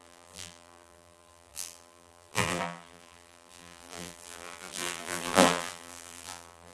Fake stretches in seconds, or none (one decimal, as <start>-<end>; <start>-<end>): 0.0-6.7